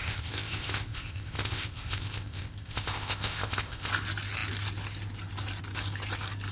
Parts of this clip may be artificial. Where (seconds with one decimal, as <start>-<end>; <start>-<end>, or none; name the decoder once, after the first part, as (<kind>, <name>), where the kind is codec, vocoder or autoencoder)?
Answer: 0.0-3.9 (codec, ZipCodec)